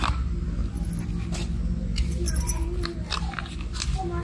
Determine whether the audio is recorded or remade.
recorded